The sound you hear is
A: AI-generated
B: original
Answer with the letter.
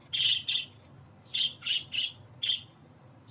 B